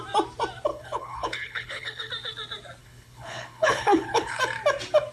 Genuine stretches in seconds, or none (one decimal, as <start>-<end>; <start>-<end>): 0.0-0.7; 2.1-2.8; 4.4-5.1